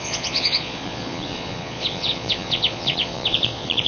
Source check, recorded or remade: remade